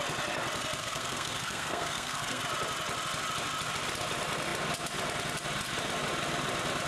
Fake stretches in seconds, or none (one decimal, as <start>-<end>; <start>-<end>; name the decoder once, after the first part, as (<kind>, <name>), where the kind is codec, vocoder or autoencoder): 0.8-2.4 (codec, SNAC)